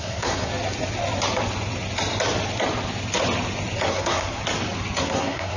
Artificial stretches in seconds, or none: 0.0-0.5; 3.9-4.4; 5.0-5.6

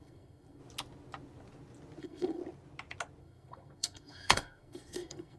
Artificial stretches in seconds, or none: 0.0-0.6; 2.0-2.4; 3.2-5.4

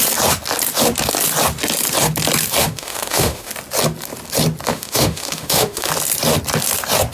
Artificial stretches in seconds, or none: 2.6-3.5; 4.7-5.9

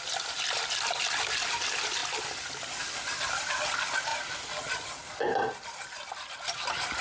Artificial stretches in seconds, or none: none